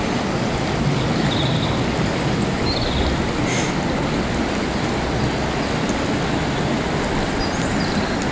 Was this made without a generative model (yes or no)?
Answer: yes